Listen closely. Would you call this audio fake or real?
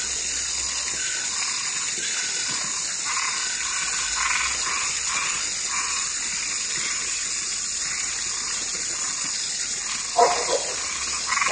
real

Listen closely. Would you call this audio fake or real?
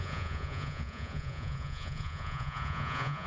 fake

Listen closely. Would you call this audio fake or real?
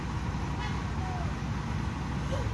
real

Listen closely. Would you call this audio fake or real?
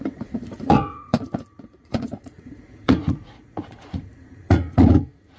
fake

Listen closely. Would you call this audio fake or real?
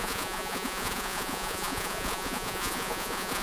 fake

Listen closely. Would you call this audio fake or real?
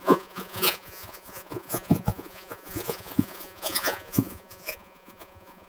fake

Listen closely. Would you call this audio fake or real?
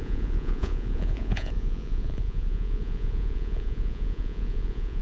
fake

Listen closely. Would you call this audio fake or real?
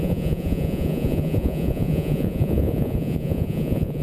fake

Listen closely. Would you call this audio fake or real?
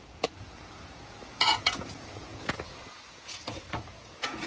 fake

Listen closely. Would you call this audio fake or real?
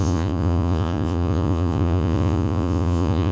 fake